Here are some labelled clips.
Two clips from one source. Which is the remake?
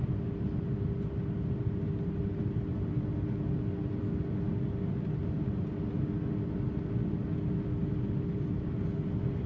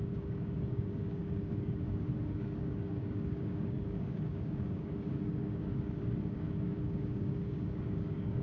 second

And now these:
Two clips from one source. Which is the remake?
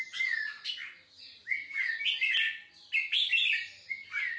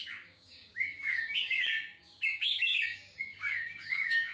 second